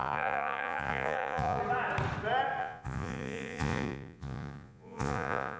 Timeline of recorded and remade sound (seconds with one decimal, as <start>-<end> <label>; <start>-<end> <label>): 0.0-1.6 remade; 1.6-2.6 recorded; 2.6-5.6 remade